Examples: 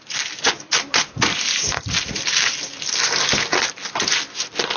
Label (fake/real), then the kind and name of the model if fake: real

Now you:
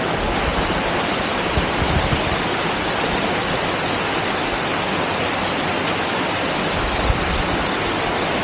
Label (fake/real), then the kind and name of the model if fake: real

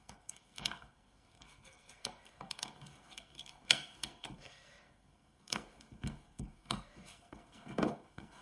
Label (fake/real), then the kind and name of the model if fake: fake, codec, SNAC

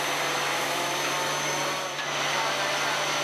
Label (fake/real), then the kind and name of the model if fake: real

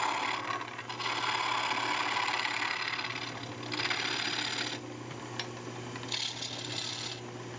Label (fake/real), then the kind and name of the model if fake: real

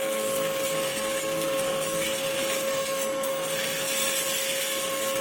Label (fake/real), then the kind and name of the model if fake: fake, codec, SNAC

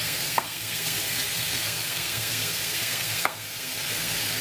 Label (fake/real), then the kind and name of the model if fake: fake, codec, SNAC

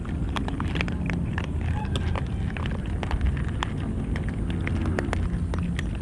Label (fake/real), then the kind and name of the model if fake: real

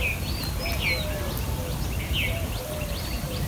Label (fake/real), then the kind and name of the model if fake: real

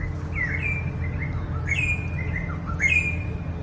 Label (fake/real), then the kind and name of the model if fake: real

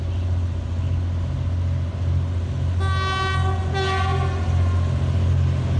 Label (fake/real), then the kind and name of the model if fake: real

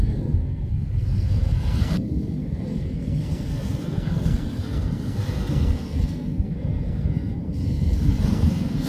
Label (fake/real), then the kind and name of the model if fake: fake, codec, SNAC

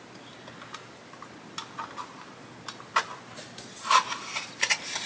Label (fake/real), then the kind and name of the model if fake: real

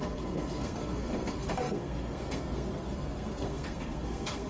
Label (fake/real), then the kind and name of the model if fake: fake, codec, SNAC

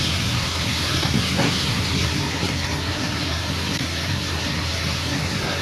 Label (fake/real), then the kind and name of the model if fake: fake, codec, SNAC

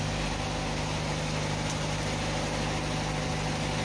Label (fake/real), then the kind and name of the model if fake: real